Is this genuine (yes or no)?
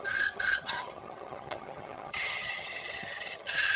no